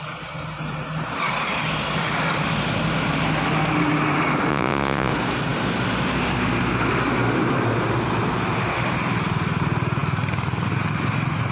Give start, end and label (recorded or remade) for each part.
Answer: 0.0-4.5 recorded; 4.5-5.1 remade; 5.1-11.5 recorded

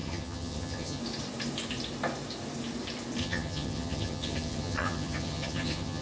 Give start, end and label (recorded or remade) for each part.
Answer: 0.0-1.0 remade; 1.0-3.2 recorded; 3.2-6.0 remade

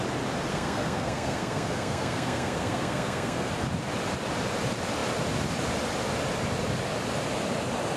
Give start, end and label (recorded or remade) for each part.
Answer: 0.0-0.5 recorded; 0.5-3.5 remade; 3.5-8.0 recorded

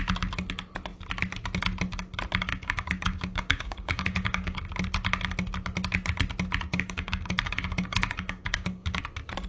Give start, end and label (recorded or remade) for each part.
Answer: 0.0-2.5 recorded; 2.5-4.6 remade; 4.6-6.7 recorded; 6.7-9.0 remade; 9.0-9.5 recorded

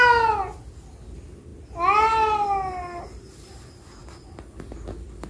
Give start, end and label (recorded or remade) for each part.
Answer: 0.0-5.3 recorded